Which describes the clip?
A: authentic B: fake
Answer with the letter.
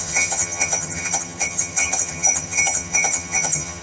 B